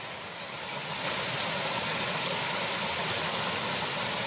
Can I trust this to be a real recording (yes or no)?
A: yes